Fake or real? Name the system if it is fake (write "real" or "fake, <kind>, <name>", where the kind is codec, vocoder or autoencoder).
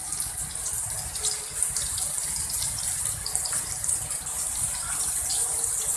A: real